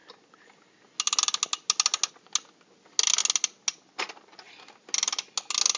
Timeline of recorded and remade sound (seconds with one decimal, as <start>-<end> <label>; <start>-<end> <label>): 0.0-5.8 recorded

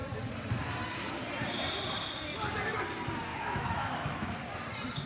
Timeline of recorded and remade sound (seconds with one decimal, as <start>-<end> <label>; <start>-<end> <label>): 0.0-3.3 recorded; 3.3-4.4 remade; 4.4-5.1 recorded

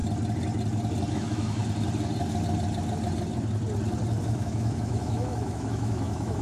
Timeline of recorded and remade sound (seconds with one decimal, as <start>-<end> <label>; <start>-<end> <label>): 0.0-1.1 recorded; 1.1-1.6 remade; 1.6-4.2 recorded; 4.2-6.4 remade

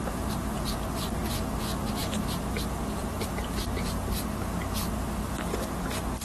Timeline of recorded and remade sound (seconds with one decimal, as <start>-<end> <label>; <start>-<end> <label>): 0.0-6.2 recorded

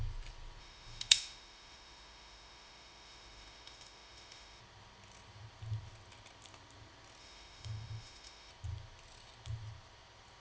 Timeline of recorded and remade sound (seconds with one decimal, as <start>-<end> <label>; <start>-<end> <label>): 0.0-0.6 recorded; 0.6-4.6 remade; 4.6-7.2 recorded; 7.2-8.5 remade; 8.5-10.4 recorded